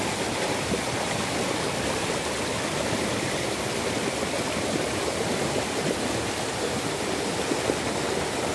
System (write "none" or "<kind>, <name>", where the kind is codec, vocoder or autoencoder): none